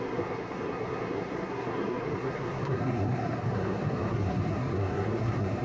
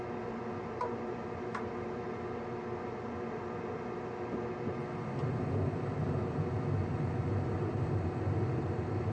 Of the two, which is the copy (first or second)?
first